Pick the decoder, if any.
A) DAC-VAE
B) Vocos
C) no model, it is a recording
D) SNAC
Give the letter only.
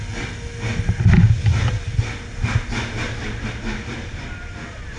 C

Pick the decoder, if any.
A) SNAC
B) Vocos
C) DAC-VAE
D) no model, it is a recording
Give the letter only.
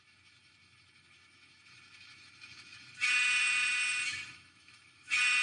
C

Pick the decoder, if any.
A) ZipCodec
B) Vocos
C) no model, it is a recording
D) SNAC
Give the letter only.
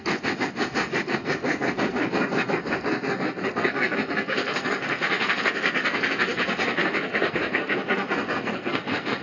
D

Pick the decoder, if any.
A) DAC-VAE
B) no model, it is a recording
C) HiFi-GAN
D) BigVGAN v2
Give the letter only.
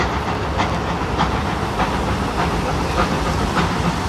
B